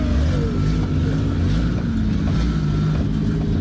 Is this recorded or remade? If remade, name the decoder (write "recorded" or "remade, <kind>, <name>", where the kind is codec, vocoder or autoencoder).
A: recorded